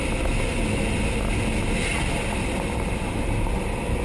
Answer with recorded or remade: recorded